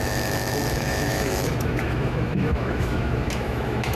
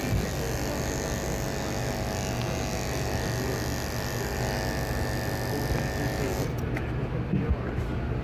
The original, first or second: second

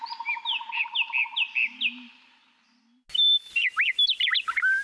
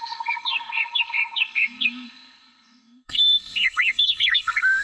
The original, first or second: first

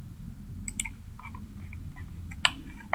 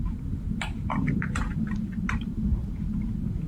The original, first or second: first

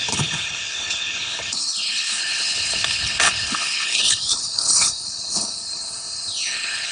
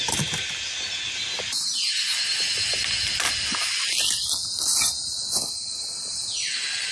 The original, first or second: second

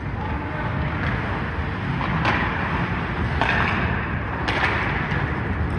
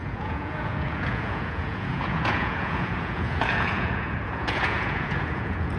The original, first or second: first